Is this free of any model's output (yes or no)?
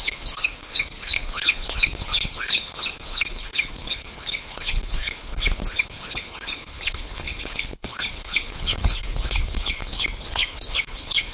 no